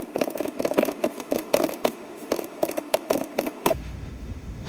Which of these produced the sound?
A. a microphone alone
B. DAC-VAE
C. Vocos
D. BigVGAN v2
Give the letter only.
B